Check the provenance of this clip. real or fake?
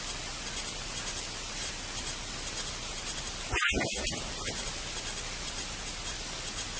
real